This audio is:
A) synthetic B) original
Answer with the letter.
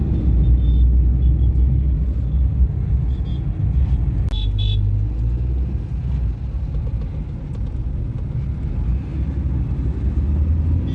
B